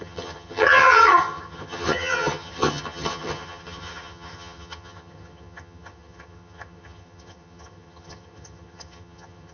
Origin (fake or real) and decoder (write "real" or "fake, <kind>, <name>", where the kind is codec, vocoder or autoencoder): fake, vocoder, HiFi-GAN